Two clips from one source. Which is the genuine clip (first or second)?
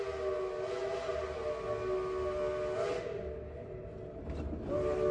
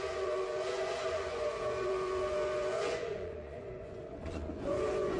first